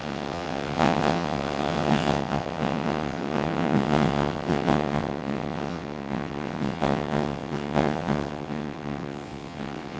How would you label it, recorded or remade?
remade